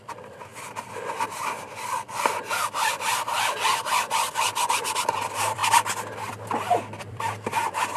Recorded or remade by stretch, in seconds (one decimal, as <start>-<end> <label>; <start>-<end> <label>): 0.0-0.5 remade; 0.5-4.6 recorded; 4.6-5.6 remade; 5.6-7.0 recorded; 7.0-8.0 remade